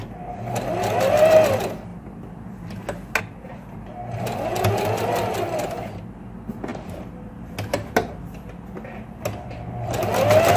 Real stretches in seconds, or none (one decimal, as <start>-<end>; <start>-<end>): 0.0-6.7; 7.5-10.6